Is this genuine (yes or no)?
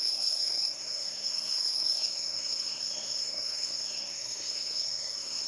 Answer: no